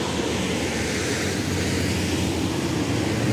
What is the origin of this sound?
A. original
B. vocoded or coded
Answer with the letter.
A